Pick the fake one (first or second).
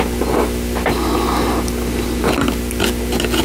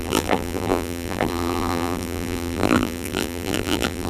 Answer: second